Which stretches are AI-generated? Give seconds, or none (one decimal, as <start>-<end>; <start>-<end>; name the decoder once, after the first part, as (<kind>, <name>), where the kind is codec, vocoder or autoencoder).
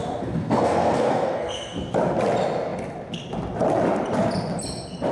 0.0-1.9 (codec, SNAC)